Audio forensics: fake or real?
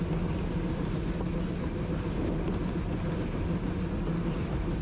real